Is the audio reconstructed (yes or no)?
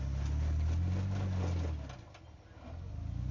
no